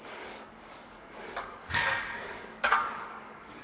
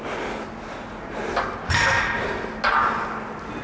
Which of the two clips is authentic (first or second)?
second